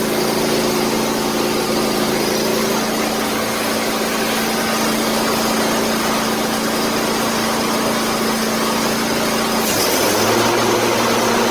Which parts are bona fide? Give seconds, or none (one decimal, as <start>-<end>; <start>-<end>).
0.0-11.5